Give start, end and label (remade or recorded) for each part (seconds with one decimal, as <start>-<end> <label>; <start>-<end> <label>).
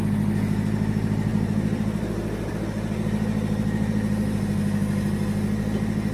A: 0.0-1.3 recorded; 1.3-2.5 remade; 2.5-6.1 recorded